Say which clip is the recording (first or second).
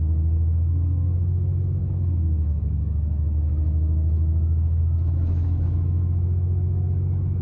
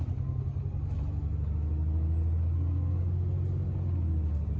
second